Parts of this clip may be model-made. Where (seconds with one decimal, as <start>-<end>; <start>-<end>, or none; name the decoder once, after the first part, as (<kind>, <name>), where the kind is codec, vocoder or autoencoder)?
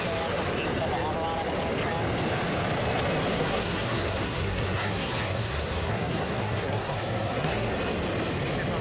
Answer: 3.3-7.7 (codec, SNAC)